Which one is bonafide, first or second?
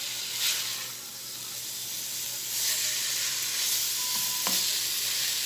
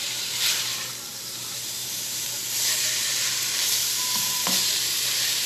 first